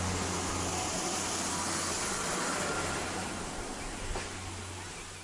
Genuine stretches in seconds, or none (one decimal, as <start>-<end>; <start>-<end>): 0.0-0.7; 3.8-5.2